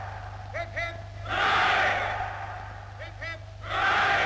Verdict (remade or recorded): recorded